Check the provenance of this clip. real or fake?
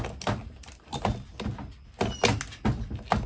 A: real